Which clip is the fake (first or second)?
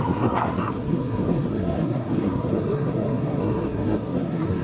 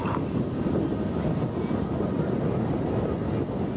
first